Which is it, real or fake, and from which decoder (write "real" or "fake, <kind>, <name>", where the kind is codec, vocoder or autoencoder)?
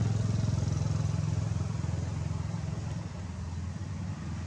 real